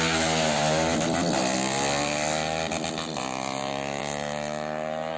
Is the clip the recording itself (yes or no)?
yes